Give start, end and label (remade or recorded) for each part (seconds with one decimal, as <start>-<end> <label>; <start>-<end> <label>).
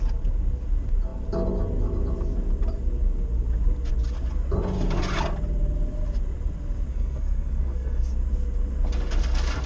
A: 0.0-6.9 recorded; 6.9-8.1 remade; 8.1-9.7 recorded